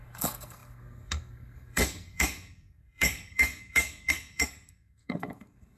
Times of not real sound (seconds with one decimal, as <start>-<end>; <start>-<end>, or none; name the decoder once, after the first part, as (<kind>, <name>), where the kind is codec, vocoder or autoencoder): 0.0-5.8 (codec, SNAC)